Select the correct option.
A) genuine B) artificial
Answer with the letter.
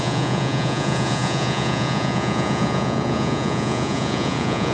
B